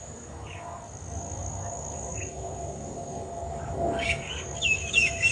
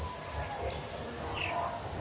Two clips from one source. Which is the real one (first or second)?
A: second